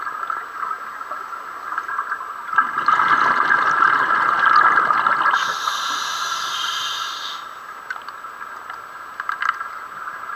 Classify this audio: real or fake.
real